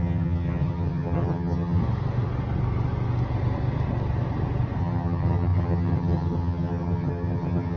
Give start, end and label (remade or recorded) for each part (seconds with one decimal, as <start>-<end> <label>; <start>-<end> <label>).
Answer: 0.0-1.8 remade; 1.8-4.8 recorded; 4.8-7.8 remade